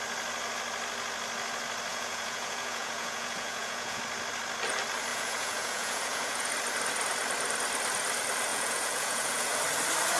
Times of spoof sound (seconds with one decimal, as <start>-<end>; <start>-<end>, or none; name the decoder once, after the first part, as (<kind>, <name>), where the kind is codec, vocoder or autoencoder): 1.9-4.0 (vocoder, Vocos); 5.1-6.5; 8.5-9.6